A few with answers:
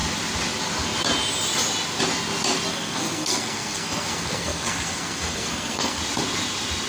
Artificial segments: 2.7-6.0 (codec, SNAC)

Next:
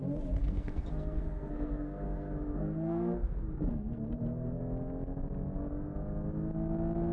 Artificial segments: 0.4-4.6 (codec, SNAC)